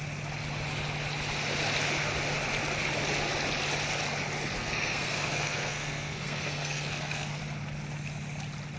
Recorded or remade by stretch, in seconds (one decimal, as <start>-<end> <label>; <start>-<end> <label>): 0.0-4.5 recorded; 4.5-7.4 remade; 7.4-8.8 recorded